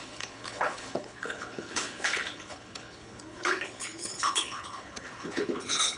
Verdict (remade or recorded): remade